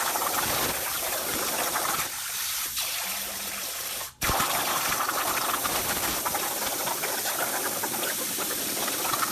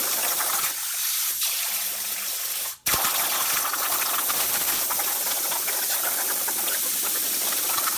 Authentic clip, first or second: second